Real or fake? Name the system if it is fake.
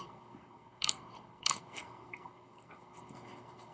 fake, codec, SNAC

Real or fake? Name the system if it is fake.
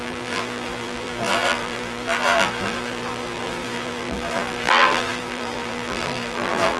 fake, vocoder, BigVGAN v2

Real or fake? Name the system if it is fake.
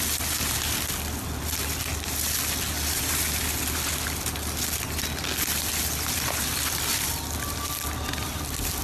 real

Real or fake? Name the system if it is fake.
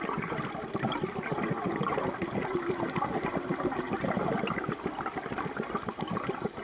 real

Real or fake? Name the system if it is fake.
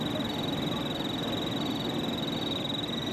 real